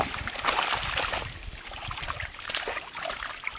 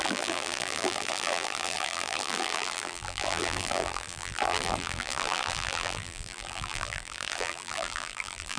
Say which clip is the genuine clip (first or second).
first